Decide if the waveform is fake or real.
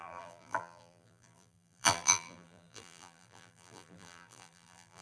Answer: fake